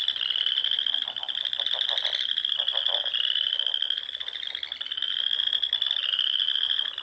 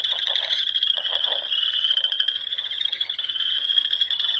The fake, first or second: second